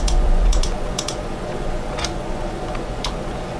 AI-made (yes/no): yes